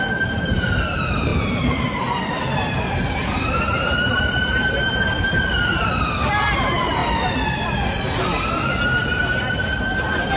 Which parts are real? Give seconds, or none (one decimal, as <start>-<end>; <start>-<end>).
5.7-6.6; 7.0-8.6